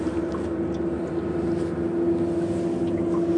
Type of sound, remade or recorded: recorded